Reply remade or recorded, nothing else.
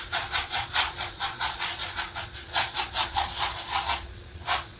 remade